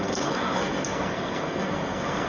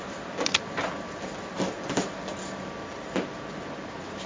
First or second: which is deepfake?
first